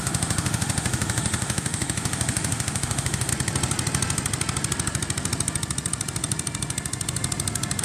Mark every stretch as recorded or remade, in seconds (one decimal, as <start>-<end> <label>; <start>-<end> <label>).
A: 0.0-3.3 remade; 3.3-7.8 recorded